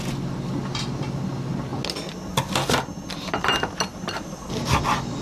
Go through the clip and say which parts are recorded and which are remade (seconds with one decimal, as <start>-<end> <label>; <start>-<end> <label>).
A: 0.0-5.2 recorded